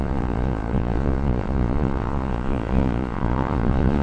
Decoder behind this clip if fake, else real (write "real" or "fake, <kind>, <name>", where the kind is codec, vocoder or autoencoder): fake, vocoder, Vocos